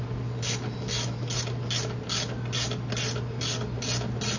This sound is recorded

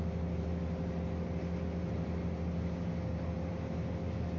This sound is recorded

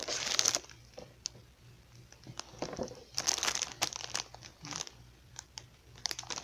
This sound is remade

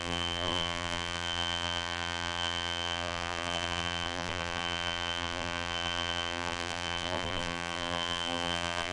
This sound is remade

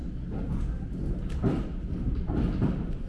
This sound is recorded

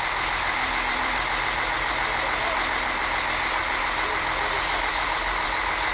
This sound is remade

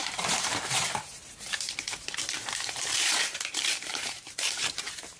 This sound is remade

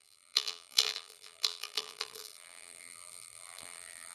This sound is remade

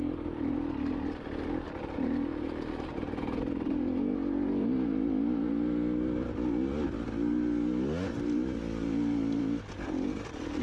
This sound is recorded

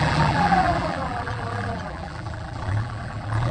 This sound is remade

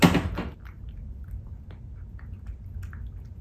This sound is recorded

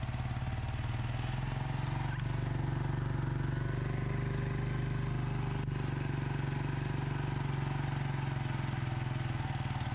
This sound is recorded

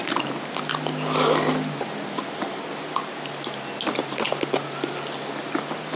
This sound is recorded